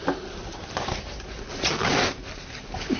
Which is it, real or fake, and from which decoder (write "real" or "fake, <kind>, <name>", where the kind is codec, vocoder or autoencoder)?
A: real